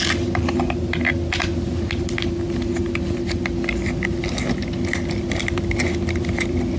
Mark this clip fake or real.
real